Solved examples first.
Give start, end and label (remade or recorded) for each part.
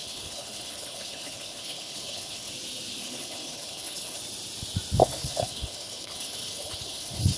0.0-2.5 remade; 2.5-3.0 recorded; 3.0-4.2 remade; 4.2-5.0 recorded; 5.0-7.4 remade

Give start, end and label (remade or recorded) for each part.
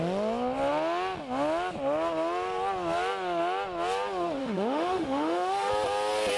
0.0-4.4 recorded; 4.4-5.7 remade; 5.7-6.4 recorded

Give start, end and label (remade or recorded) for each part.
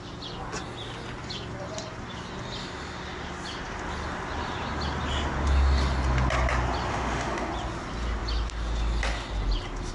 0.0-6.9 recorded; 6.9-7.5 remade; 7.5-9.9 recorded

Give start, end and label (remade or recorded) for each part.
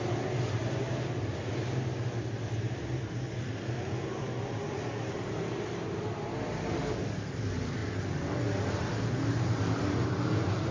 0.0-10.7 recorded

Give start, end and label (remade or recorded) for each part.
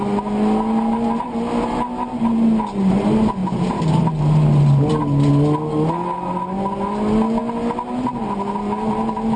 0.0-9.4 recorded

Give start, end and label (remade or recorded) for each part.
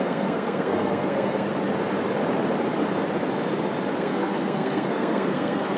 0.0-1.5 remade; 1.5-4.0 recorded; 4.0-5.8 remade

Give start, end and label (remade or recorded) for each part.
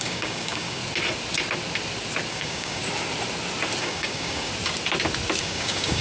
0.0-0.8 remade; 0.8-2.3 recorded; 2.3-2.8 remade; 2.8-3.8 recorded; 3.8-4.5 remade; 4.5-5.4 recorded; 5.4-6.0 remade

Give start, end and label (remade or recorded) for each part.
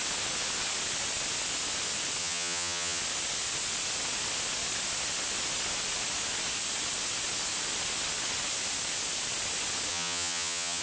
0.0-2.2 recorded; 2.2-3.0 remade; 3.0-9.9 recorded; 9.9-10.8 remade